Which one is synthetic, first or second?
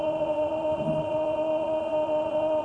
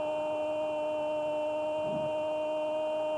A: first